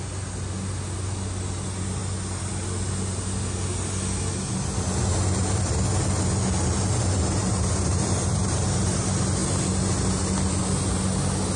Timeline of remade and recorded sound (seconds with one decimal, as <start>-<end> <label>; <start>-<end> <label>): 0.0-7.4 recorded; 7.4-9.0 remade; 9.0-11.6 recorded